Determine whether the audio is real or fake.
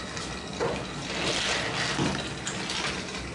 real